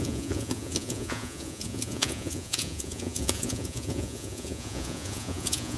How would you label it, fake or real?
fake